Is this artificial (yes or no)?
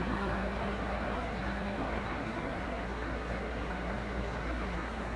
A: yes